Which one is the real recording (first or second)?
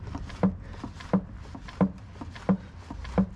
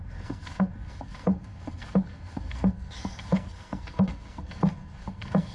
first